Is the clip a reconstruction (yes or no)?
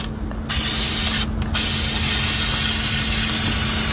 no